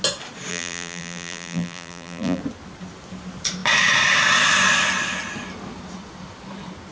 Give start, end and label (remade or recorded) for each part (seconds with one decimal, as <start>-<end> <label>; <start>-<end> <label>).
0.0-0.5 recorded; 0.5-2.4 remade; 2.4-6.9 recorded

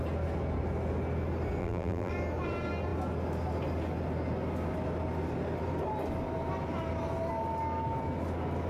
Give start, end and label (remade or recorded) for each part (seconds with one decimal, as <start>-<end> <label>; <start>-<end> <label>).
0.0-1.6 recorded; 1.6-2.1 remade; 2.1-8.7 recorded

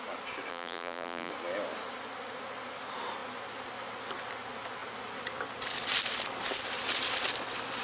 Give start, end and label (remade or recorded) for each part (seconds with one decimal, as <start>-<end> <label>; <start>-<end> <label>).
0.0-0.5 recorded; 0.5-1.3 remade; 1.3-7.8 recorded